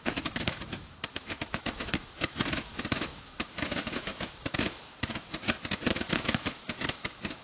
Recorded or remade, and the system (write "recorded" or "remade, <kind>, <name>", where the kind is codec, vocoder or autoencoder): remade, autoencoder, DAC-VAE